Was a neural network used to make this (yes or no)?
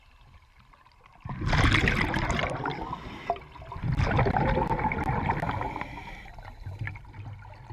no